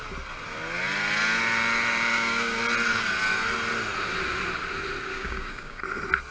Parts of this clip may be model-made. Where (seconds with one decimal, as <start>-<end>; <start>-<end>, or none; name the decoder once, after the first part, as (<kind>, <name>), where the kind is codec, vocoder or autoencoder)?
2.1-2.6 (codec, DAC); 5.1-5.8